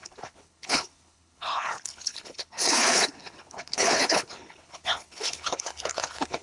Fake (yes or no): yes